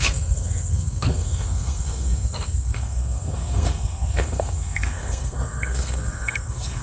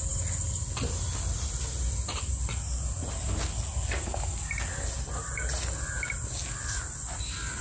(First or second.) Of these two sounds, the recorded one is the second